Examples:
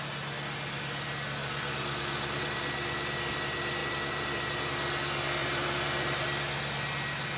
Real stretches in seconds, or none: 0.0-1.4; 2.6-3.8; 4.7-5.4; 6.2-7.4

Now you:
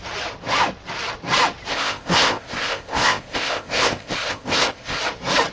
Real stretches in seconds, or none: 0.0-1.7; 5.0-5.5

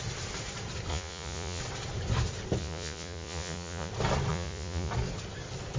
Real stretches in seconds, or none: 0.0-0.9; 1.6-2.6; 3.9-4.3; 4.9-5.8

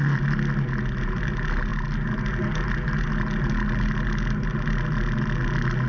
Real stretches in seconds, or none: 0.0-5.9

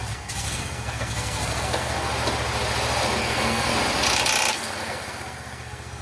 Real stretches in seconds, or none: 2.1-3.2; 3.7-4.5